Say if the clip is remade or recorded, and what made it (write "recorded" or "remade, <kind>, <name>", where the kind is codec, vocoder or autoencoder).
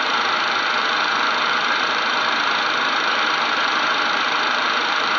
remade, vocoder, BigVGAN v2